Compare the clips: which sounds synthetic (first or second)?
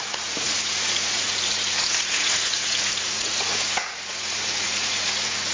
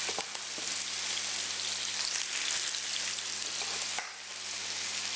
first